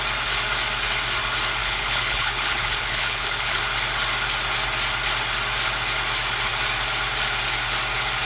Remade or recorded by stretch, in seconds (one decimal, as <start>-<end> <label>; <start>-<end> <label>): 0.0-1.6 recorded; 1.6-3.6 remade; 3.6-8.2 recorded